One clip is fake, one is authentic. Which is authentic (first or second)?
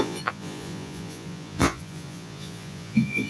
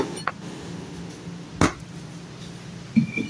second